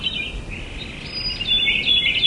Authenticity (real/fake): real